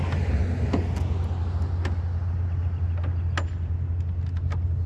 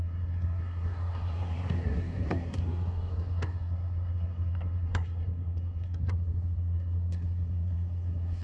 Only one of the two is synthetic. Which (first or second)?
second